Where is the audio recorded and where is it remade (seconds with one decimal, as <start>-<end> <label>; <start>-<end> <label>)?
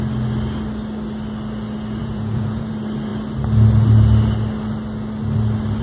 0.0-2.0 recorded; 2.0-2.7 remade; 2.7-5.8 recorded